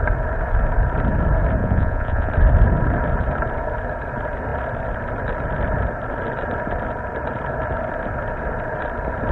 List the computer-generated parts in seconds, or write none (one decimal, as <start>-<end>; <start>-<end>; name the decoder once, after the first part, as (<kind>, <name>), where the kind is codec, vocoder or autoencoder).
1.6-2.3 (vocoder, Vocos)